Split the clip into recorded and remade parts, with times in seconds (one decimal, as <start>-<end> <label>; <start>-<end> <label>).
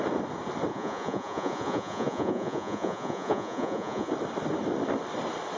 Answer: 0.0-0.7 recorded; 0.7-4.1 remade; 4.1-5.6 recorded